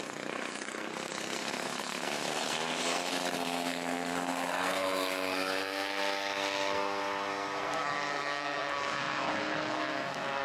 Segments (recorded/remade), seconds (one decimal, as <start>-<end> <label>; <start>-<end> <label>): 0.0-10.4 remade